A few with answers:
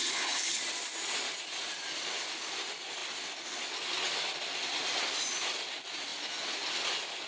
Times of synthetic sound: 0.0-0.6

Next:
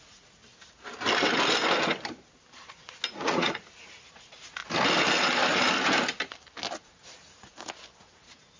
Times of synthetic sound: 0.0-0.4; 3.1-4.6; 6.8-7.5; 8.0-8.6

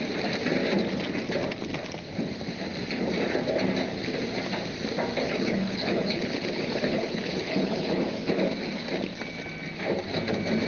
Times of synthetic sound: 5.2-8.4